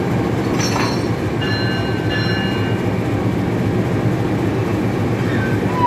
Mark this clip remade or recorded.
recorded